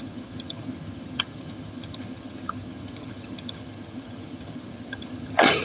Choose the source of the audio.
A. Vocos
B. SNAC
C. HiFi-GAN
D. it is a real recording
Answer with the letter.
C